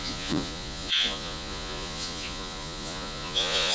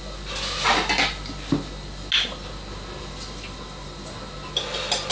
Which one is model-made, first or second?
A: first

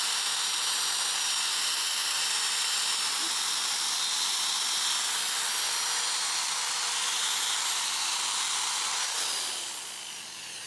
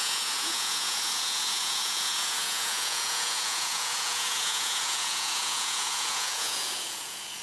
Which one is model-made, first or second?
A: second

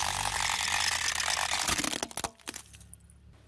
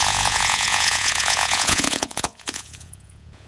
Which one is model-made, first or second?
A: second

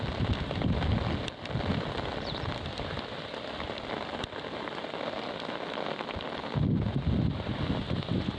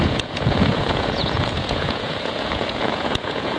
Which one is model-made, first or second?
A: second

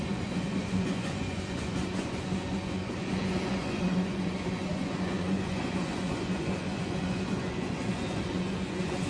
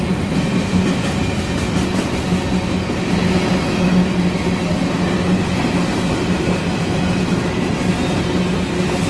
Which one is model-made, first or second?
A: first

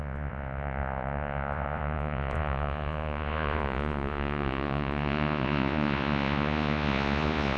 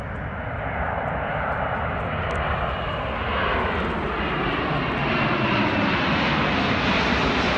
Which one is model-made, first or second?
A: first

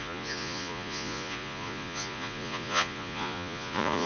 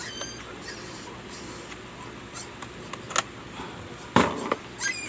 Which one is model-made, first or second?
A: first